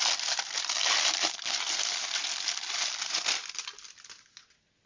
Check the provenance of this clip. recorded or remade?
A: recorded